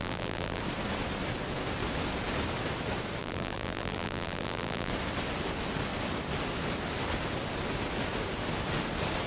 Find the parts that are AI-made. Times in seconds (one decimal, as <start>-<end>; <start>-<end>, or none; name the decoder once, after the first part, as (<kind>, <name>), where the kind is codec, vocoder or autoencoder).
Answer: 0.0-0.6 (vocoder, BigVGAN v2); 3.2-4.9